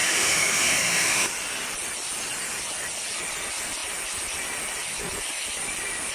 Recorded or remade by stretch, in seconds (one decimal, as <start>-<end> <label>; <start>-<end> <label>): 0.0-1.3 remade; 1.3-6.1 recorded

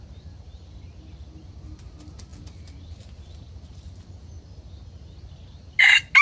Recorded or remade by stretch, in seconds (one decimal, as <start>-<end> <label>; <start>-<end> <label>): 0.0-6.2 recorded

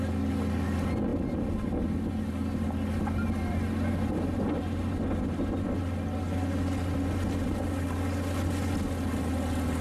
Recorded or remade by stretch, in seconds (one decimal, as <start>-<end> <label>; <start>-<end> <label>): 0.0-9.8 recorded

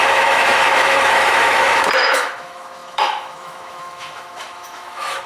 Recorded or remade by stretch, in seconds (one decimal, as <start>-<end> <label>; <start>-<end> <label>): 0.0-5.3 remade

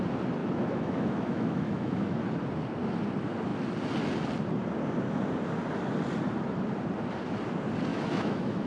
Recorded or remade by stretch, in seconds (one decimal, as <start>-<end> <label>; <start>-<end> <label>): 0.0-0.4 recorded; 0.4-2.2 remade; 2.2-7.9 recorded; 7.9-8.7 remade

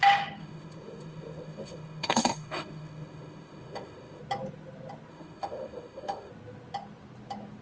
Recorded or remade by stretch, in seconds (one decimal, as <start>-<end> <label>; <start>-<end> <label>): 0.0-0.4 recorded; 0.4-4.2 remade; 4.2-5.1 recorded; 5.1-6.3 remade; 6.3-7.6 recorded

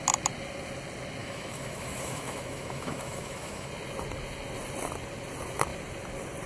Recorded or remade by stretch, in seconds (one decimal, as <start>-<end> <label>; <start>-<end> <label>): 0.0-1.2 recorded; 1.2-3.7 remade; 3.7-6.5 recorded

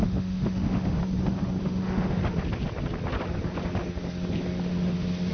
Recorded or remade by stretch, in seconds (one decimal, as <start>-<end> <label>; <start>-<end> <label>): 0.0-1.0 remade; 1.0-1.6 recorded; 1.6-2.2 remade; 2.2-5.3 recorded